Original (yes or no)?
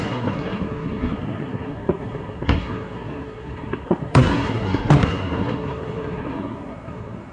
no